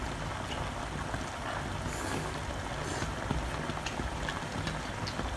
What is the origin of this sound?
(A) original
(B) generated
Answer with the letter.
A